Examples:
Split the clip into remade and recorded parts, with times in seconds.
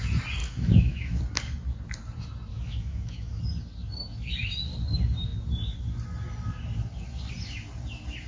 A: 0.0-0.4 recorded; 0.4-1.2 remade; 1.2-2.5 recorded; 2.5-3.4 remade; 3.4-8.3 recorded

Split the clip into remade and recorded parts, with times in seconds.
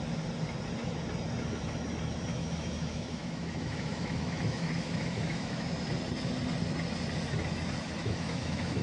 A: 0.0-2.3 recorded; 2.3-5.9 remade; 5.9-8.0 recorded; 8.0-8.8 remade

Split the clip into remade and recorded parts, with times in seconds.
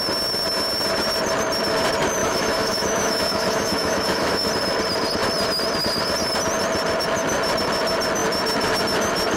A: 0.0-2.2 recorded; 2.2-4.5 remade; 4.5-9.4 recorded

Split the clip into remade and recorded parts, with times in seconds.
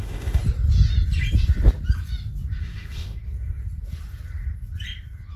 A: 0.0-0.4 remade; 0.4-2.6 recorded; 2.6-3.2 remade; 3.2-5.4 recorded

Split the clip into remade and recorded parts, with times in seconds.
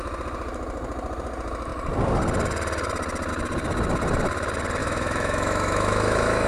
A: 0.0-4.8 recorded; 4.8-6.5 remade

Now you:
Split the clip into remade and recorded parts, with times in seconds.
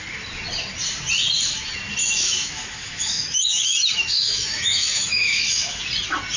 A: 0.0-2.0 recorded; 2.0-5.8 remade; 5.8-6.4 recorded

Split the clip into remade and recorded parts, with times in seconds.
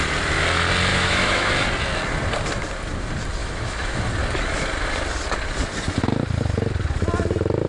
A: 0.0-0.9 recorded; 0.9-1.5 remade; 1.5-3.4 recorded; 3.4-4.0 remade; 4.0-7.7 recorded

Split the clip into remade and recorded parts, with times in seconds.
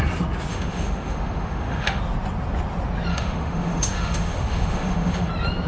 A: 0.0-0.5 recorded; 0.5-2.0 remade; 2.0-3.1 recorded; 3.1-5.3 remade; 5.3-5.7 recorded